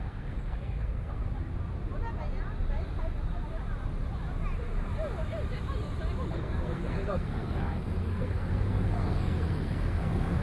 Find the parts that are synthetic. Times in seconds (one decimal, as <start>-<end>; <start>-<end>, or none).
0.0-1.2; 6.3-10.4